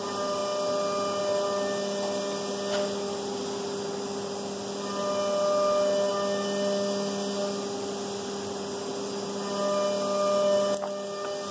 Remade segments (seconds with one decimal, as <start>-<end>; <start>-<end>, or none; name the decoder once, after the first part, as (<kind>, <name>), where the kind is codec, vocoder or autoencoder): none